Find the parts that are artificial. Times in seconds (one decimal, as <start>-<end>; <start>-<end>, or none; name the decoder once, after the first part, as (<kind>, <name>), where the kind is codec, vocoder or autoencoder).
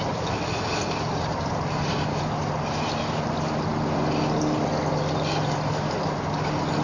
1.3-2.2 (vocoder, BigVGAN v2)